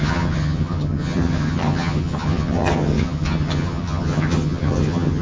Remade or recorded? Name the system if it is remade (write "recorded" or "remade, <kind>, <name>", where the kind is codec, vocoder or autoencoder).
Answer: remade, vocoder, HiFi-GAN